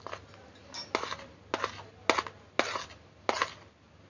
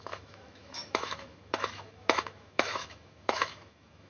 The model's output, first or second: second